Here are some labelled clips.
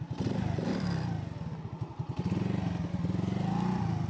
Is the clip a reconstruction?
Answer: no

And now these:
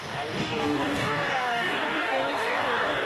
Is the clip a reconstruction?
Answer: yes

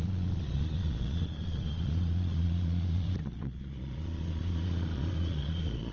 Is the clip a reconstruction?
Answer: yes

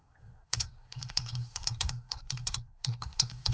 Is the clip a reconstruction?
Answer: yes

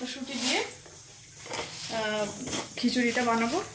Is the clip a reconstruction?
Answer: no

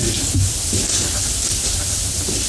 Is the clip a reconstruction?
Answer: no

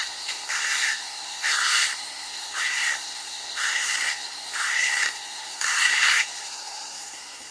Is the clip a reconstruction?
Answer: yes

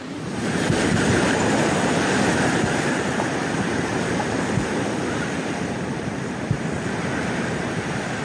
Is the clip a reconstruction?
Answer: yes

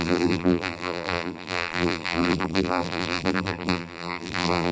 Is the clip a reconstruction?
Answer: yes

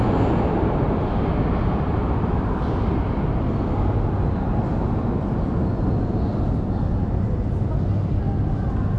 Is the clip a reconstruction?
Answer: no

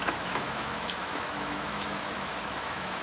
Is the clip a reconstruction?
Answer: yes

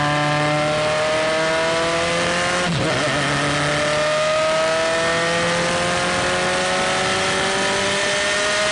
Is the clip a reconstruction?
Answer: no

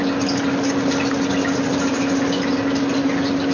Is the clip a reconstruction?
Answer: no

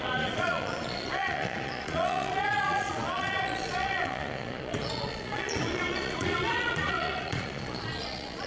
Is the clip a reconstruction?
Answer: yes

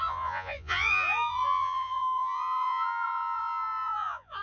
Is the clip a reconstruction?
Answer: yes